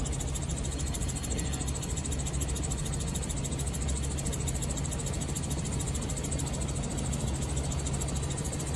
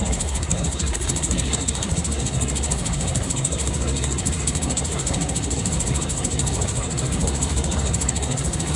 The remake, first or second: second